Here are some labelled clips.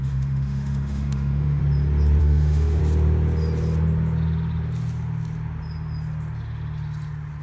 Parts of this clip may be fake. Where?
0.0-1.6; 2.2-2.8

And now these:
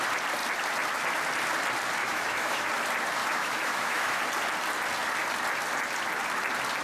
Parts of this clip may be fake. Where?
2.0-2.7; 3.2-4.2

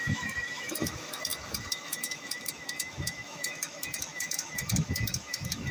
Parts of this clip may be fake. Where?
0.0-5.7

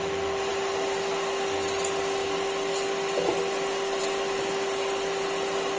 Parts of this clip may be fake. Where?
none

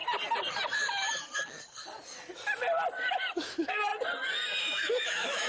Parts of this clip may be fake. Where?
3.3-3.9; 4.6-5.5

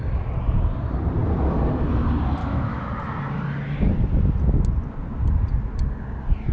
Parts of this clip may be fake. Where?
2.4-2.9